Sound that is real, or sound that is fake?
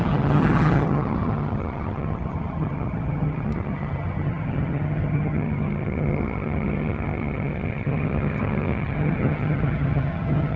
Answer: fake